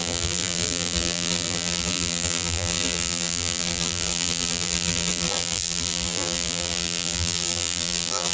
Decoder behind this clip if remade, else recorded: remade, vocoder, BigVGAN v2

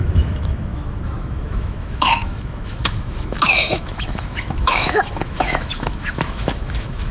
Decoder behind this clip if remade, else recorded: remade, autoencoder, DAC-VAE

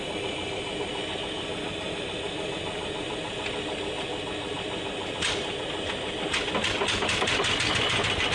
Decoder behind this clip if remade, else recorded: recorded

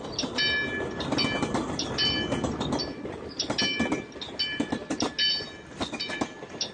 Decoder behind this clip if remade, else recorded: recorded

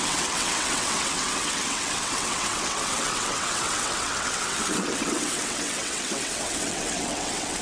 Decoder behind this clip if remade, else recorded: remade, vocoder, WaveNeXt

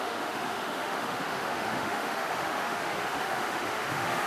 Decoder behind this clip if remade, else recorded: remade, autoencoder, DAC-VAE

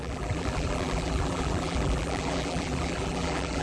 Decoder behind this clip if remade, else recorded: remade, vocoder, BigVGAN v2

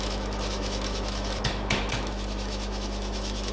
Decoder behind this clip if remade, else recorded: remade, autoencoder, DAC-VAE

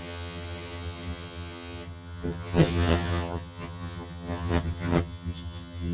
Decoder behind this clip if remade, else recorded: remade, vocoder, HiFi-GAN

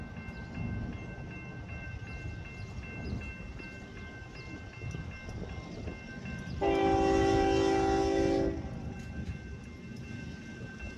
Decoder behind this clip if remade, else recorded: recorded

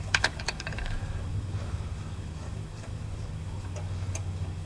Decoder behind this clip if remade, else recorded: remade, codec, DAC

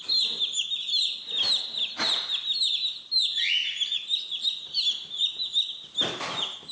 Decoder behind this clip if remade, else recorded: recorded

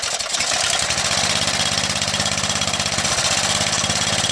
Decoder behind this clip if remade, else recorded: recorded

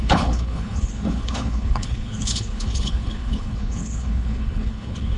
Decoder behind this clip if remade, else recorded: remade, codec, HILCodec